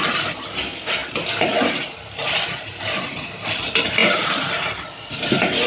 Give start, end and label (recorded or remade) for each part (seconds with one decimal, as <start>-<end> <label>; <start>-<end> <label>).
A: 0.0-5.7 recorded

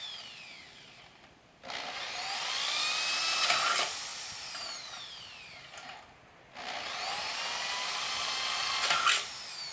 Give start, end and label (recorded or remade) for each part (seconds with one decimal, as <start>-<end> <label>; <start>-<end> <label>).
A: 0.0-9.7 recorded

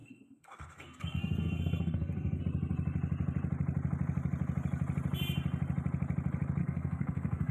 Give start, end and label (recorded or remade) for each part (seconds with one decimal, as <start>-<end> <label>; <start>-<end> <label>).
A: 0.0-2.4 remade; 2.4-6.6 recorded; 6.6-7.5 remade

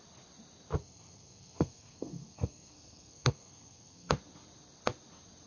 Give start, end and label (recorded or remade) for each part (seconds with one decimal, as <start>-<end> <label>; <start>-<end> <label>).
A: 0.0-0.8 recorded; 0.8-4.1 remade; 4.1-5.5 recorded

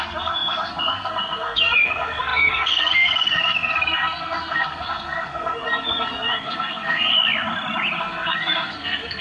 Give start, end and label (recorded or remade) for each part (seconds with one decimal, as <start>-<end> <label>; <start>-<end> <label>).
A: 0.0-7.1 remade; 7.1-8.0 recorded; 8.0-9.2 remade